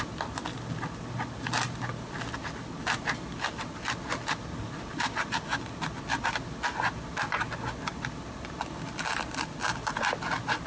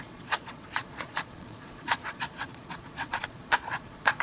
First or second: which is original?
first